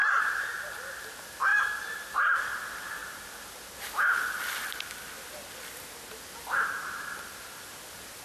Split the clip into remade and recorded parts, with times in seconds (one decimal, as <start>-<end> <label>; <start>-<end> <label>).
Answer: 0.0-1.5 recorded; 1.5-2.4 remade; 2.4-3.0 recorded; 3.0-3.9 remade; 3.9-8.2 recorded